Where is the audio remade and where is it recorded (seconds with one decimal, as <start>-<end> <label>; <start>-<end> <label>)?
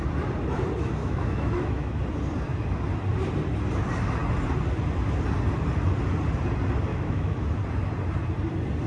0.0-1.0 recorded; 1.0-2.0 remade; 2.0-6.9 recorded; 6.9-7.4 remade; 7.4-8.9 recorded